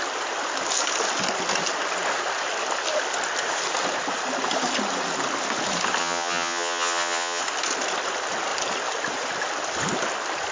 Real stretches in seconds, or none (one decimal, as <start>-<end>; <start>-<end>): 0.0-6.0; 7.4-10.5